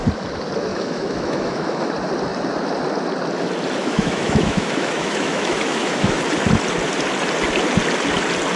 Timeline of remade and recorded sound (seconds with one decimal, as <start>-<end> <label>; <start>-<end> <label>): 0.0-0.7 recorded; 0.7-1.9 remade; 1.9-3.8 recorded; 3.8-6.2 remade; 6.2-8.6 recorded